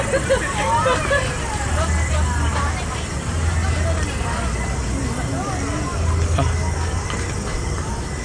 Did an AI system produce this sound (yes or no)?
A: no